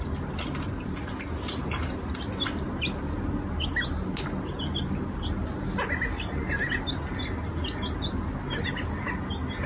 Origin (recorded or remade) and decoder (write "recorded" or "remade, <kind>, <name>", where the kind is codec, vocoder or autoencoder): recorded